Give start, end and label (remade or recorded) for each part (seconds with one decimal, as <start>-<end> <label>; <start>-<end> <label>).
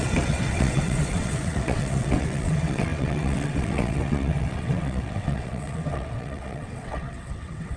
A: 0.0-7.8 remade